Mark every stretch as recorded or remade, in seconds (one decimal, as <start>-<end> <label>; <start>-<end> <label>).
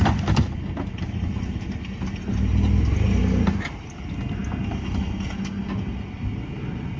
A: 0.0-7.0 recorded